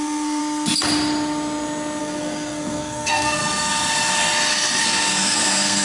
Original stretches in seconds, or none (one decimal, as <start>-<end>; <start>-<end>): 0.4-2.0; 3.4-4.8